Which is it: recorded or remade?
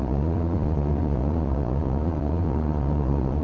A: remade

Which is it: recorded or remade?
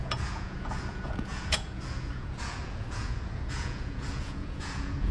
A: remade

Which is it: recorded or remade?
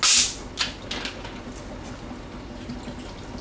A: recorded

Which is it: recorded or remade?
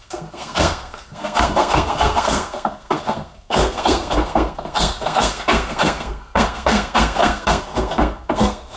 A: remade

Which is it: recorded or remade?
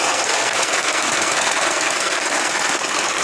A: remade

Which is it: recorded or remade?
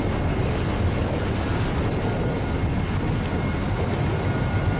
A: recorded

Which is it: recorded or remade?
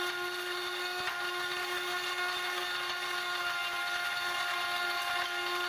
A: recorded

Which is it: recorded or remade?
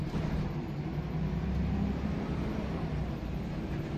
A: remade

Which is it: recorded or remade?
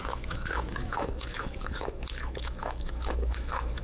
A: remade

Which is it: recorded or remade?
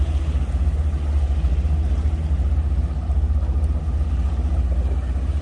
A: recorded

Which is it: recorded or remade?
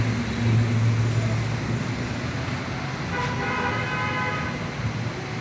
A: recorded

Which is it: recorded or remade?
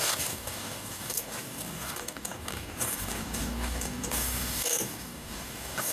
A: remade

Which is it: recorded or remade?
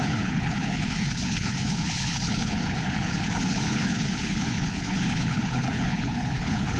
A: remade